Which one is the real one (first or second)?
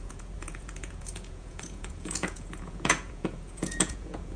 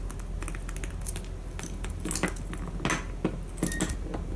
second